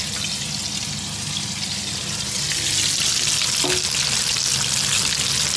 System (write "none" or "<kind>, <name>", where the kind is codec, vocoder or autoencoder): none